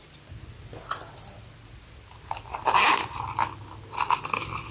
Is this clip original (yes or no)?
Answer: yes